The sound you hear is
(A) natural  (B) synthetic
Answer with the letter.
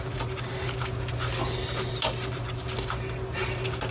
A